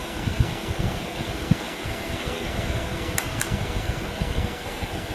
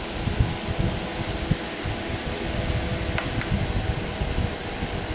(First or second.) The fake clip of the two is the first